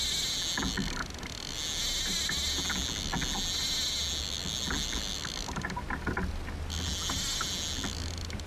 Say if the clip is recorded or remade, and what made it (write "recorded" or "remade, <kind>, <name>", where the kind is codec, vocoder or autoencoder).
recorded